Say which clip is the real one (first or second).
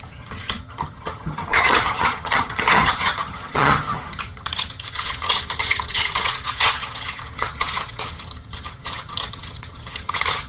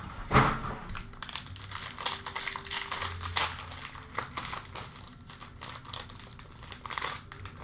second